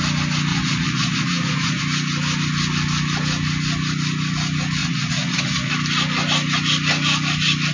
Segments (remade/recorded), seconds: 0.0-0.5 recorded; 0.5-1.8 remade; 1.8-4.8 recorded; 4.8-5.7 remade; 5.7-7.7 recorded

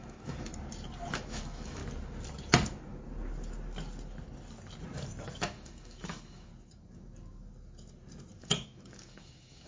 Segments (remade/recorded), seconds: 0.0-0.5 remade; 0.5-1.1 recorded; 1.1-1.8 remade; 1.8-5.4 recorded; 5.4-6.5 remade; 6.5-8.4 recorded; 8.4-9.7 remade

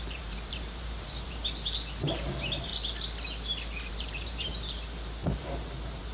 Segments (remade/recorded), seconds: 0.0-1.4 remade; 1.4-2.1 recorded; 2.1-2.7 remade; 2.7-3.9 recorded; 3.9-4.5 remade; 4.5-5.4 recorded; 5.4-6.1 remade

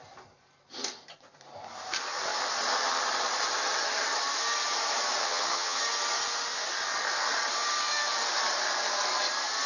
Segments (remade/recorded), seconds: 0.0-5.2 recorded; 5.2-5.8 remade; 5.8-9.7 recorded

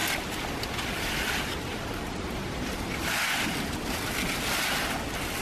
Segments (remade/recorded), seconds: 0.0-3.2 remade; 3.2-5.4 recorded

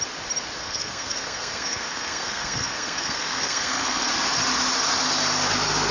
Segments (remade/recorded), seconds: 0.0-0.6 recorded; 0.6-4.1 remade; 4.1-5.9 recorded

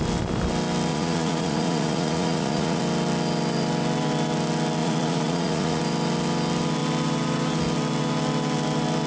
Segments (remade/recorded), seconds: 0.0-0.9 recorded; 0.9-2.8 remade; 2.8-4.8 recorded; 4.8-5.8 remade; 5.8-9.1 recorded

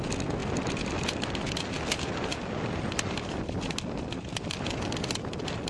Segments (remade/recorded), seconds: 0.0-5.7 recorded